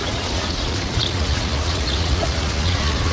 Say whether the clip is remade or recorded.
remade